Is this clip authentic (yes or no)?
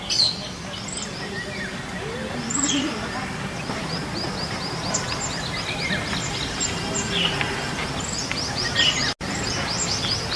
yes